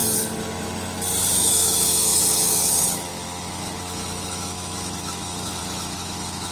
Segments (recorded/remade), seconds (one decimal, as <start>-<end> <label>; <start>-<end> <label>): 0.0-1.3 recorded; 1.3-6.5 remade